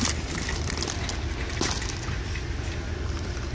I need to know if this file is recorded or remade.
recorded